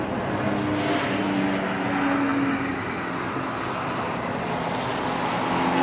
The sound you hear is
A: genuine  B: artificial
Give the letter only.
A